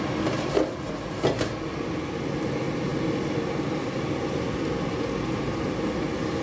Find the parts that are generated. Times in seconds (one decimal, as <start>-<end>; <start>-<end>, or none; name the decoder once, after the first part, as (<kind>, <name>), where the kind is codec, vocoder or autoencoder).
none